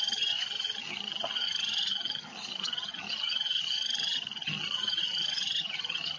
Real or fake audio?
fake